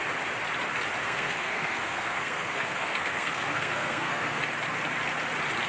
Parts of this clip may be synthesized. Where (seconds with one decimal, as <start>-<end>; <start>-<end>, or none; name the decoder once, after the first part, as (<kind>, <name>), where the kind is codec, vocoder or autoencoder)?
1.0-4.4 (codec, SNAC)